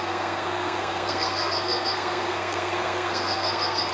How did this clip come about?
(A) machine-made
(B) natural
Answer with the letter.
A